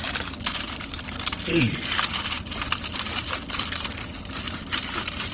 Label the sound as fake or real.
fake